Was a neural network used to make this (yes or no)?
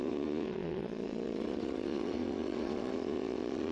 yes